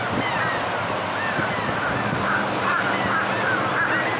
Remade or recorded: recorded